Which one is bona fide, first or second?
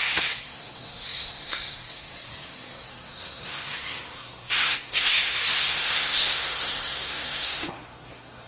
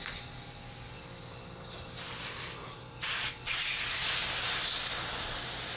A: second